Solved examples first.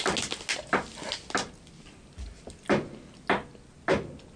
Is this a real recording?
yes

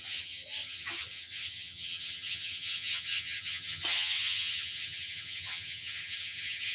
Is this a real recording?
no